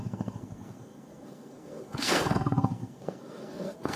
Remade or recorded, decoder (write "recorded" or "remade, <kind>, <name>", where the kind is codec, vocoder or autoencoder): remade, codec, SNAC